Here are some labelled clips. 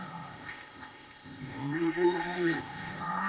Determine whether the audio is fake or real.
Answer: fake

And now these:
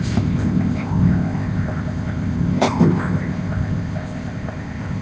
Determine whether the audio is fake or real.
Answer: fake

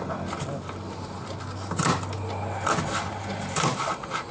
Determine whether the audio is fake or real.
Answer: real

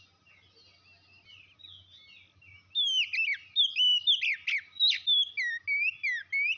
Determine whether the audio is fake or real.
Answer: real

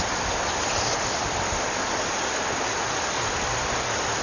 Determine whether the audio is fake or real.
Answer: real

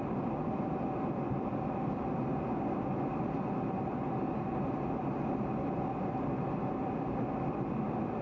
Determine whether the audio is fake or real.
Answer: real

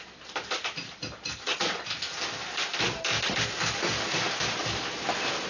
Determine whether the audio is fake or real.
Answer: real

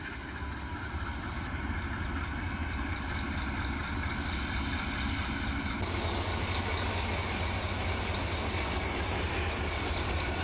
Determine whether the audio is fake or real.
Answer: real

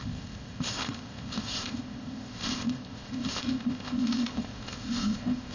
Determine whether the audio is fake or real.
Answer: fake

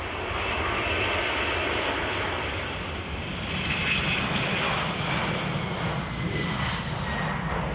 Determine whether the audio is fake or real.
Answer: real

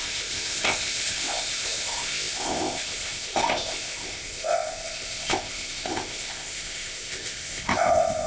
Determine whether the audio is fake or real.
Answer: fake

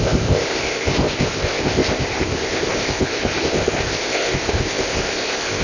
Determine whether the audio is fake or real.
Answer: fake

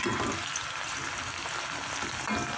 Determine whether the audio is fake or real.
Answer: real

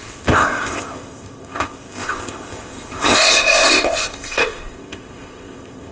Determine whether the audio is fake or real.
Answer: fake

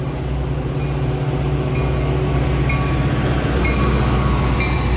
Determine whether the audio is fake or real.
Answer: real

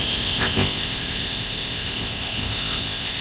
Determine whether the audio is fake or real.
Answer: fake